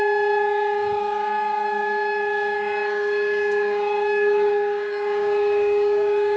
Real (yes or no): no